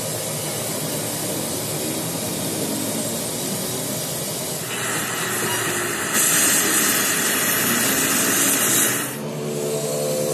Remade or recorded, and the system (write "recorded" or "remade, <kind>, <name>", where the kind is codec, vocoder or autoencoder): recorded